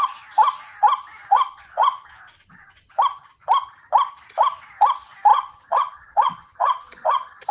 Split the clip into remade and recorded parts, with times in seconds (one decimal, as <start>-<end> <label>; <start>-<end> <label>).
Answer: 0.0-1.2 recorded; 1.2-3.0 remade; 3.0-5.3 recorded; 5.3-7.5 remade